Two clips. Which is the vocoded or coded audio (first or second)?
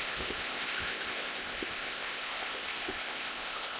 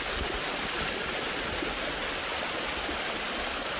first